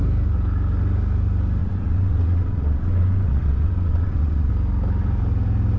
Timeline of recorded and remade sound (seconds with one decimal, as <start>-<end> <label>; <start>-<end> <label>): 0.0-1.6 recorded; 1.6-4.5 remade; 4.5-5.8 recorded